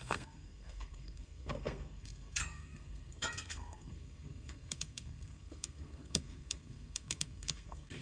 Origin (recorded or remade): remade